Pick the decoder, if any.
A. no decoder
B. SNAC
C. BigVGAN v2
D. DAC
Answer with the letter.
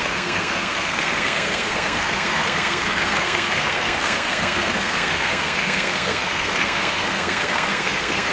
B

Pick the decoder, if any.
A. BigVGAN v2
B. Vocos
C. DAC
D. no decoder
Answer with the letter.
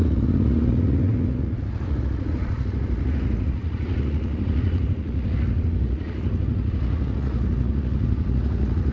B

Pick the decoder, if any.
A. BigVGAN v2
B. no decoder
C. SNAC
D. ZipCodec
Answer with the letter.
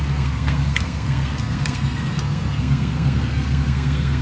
C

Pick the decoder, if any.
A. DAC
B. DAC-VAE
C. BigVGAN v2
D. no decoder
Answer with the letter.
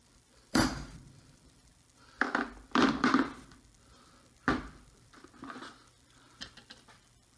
C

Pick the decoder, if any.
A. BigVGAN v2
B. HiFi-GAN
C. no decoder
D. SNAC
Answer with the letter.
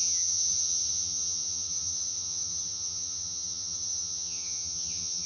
B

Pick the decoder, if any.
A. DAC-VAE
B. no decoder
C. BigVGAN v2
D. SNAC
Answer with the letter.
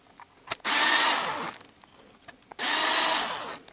B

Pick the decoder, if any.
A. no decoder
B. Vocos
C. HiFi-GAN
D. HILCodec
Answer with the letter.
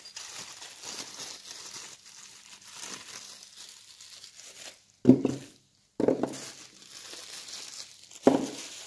A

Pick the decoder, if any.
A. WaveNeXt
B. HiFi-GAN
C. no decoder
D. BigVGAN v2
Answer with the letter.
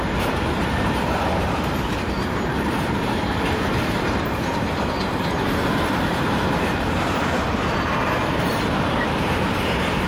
D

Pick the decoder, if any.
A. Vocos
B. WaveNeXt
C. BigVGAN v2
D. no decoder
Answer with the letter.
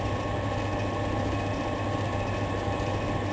D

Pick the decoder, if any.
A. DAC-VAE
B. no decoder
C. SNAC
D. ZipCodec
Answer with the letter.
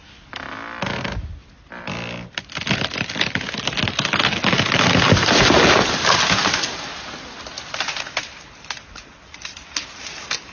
B